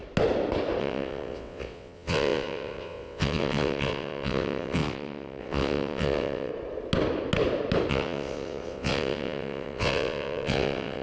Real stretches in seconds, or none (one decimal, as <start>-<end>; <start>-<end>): 0.0-0.8; 6.5-7.9